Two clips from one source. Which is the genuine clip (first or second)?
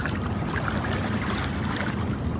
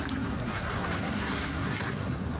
first